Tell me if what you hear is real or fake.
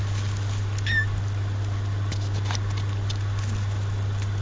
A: real